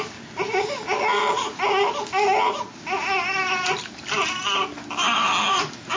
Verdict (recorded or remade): recorded